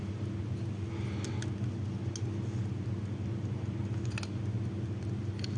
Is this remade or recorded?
recorded